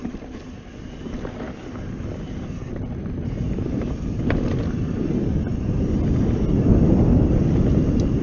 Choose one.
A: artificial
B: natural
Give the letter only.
B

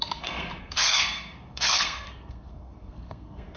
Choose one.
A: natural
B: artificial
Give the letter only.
B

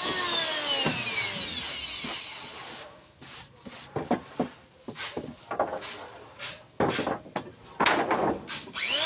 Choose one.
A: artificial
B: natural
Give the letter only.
B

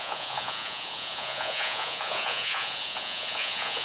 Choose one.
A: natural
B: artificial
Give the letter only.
B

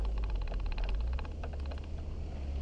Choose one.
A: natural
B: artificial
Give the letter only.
A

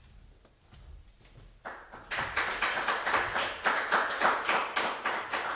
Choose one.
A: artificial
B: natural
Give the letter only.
B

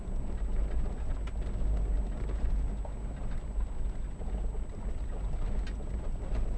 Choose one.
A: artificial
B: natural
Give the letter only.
B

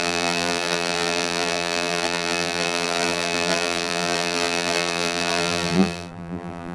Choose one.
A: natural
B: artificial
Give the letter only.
B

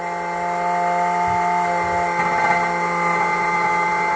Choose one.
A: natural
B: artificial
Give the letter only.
A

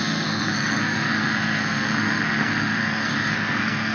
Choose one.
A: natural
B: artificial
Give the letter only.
B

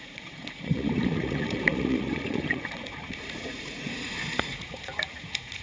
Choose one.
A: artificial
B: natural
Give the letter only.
A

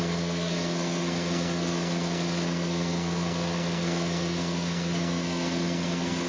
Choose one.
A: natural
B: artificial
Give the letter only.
B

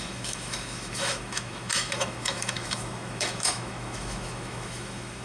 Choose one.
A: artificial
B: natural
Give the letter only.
A